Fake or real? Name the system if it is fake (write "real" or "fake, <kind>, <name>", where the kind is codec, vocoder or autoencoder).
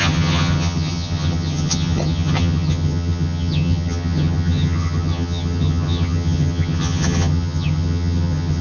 fake, vocoder, HiFi-GAN